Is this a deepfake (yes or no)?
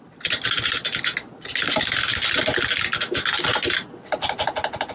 no